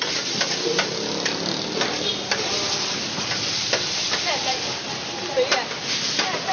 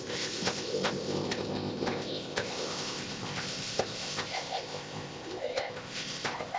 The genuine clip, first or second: first